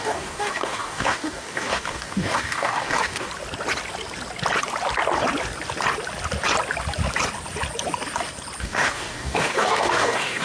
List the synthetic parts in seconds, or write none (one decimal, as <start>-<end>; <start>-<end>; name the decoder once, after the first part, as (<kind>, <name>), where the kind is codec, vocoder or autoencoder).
0.0-3.3 (codec, DAC); 8.6-10.4